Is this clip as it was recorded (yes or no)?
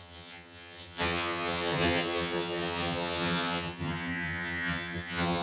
no